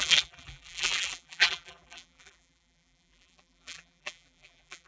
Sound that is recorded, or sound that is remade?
remade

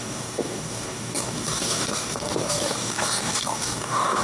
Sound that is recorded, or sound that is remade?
remade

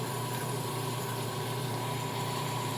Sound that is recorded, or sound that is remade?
remade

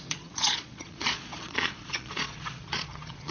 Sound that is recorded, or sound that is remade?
remade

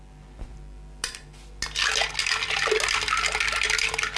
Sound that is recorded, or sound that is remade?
recorded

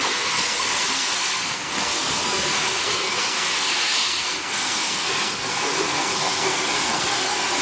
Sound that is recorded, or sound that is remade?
remade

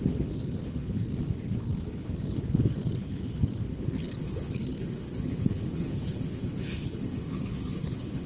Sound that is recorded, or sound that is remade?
remade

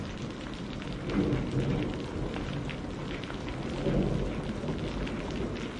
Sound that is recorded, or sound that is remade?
recorded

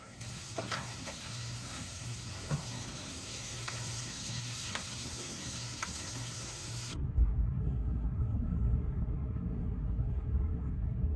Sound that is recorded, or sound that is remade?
remade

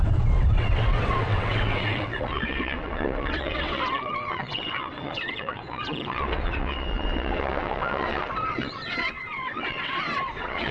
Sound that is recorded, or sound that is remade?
remade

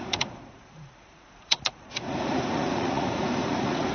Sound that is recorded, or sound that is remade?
remade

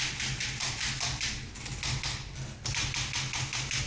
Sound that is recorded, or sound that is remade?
recorded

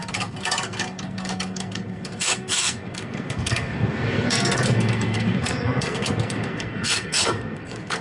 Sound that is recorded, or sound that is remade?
remade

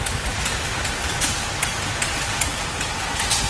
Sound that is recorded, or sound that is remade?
recorded